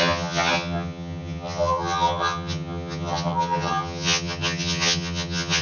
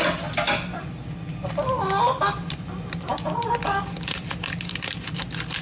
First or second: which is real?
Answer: second